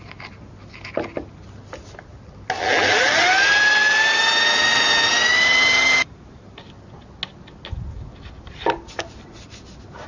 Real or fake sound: real